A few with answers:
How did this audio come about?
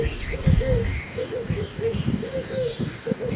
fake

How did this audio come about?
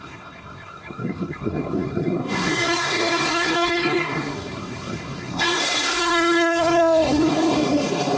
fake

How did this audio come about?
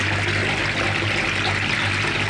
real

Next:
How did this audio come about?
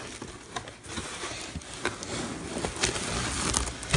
real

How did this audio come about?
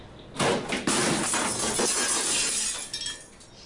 real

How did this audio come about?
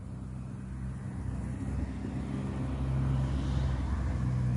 real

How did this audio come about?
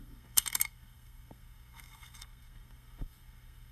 fake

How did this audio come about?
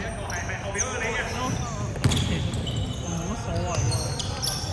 real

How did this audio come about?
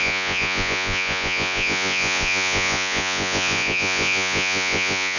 fake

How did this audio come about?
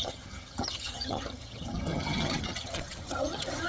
fake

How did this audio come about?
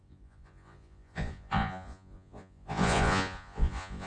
fake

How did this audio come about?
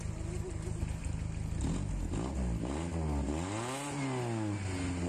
real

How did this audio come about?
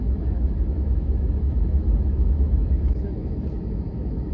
fake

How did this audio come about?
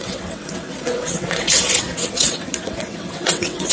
fake